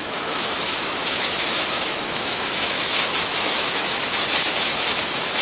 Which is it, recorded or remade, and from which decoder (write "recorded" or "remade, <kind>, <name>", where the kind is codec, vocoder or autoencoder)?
remade, autoencoder, DAC-VAE